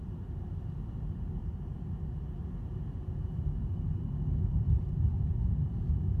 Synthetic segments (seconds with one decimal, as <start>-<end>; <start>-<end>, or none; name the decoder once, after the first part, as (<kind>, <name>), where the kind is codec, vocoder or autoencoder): 1.4-2.1 (vocoder, BigVGAN v2)